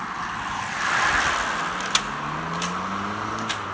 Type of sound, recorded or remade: recorded